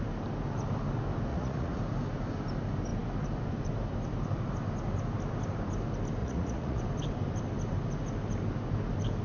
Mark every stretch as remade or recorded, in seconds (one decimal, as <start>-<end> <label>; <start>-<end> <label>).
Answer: 0.0-1.3 recorded; 1.3-1.8 remade; 1.8-6.2 recorded; 6.2-6.8 remade; 6.8-9.2 recorded